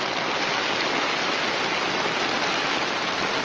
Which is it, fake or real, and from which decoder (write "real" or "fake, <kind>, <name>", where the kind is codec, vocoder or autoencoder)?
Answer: real